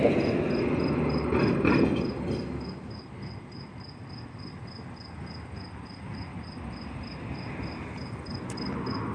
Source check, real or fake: real